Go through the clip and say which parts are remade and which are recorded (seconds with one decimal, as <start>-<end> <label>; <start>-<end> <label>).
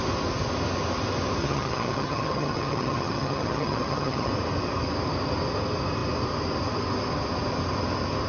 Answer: 0.0-1.4 recorded; 1.4-4.3 remade; 4.3-8.3 recorded